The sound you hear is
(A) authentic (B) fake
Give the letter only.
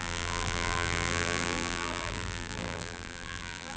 B